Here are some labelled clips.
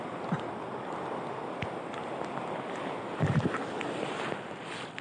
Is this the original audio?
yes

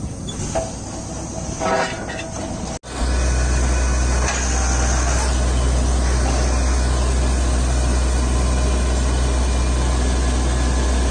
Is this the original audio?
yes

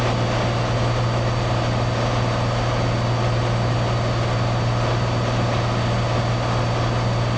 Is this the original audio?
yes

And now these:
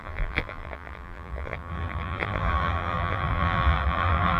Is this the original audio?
no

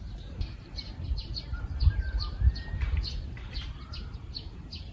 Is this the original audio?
no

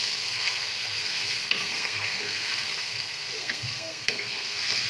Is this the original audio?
no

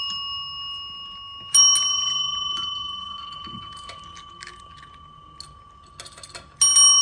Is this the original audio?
yes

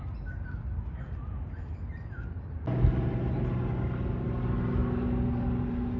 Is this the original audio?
yes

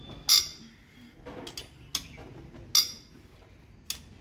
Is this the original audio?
yes